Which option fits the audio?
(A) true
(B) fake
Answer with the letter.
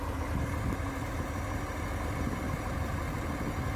A